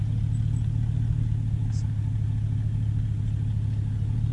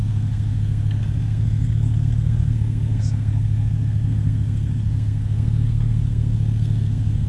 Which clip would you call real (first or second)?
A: first